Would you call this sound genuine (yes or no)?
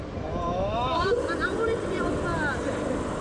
yes